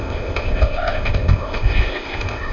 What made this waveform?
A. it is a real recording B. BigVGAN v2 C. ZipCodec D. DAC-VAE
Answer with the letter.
C